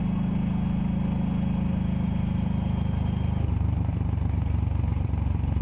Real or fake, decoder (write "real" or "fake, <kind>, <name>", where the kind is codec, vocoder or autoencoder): real